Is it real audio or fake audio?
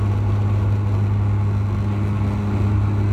real